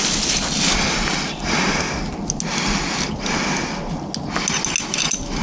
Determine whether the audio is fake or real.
real